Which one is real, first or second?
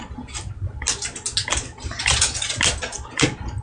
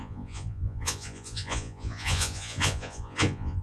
first